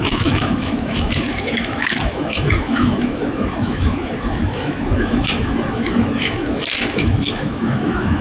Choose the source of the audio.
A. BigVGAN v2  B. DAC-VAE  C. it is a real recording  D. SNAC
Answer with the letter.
B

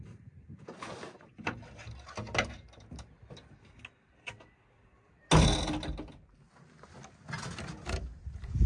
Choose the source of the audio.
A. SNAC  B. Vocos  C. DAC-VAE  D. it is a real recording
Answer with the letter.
D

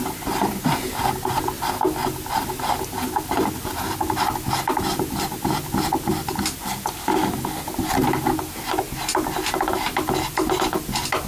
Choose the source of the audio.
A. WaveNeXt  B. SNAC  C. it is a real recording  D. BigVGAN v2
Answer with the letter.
C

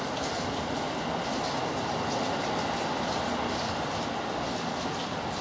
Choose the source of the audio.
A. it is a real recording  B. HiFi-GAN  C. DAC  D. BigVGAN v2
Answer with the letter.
A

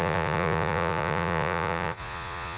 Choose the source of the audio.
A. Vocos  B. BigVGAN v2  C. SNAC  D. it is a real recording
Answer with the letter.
A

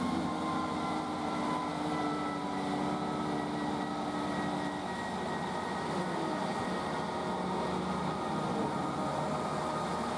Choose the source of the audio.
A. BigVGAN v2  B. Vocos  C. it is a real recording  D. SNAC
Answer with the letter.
C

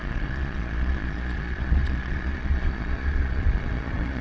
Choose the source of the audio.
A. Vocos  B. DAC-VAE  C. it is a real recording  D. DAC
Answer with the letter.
A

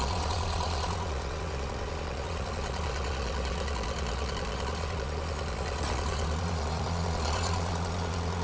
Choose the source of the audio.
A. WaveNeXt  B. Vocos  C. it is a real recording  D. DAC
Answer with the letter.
B